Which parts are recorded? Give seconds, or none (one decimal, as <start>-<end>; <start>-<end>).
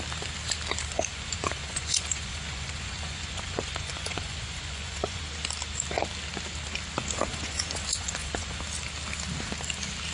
0.0-1.1; 5.2-7.3; 8.6-10.1